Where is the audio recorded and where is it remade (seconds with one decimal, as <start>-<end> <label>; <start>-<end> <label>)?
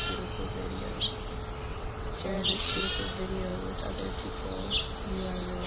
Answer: 0.0-1.7 recorded; 1.7-2.8 remade; 2.8-5.7 recorded